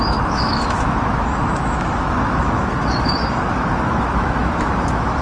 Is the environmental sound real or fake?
fake